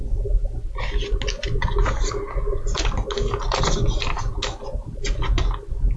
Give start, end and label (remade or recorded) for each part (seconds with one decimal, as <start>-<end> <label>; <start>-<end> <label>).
0.0-6.0 recorded